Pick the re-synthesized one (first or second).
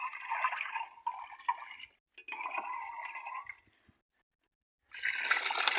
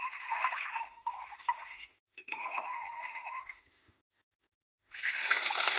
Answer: second